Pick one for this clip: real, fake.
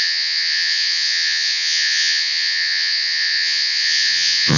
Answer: fake